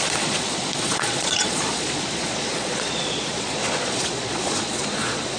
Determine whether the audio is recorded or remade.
remade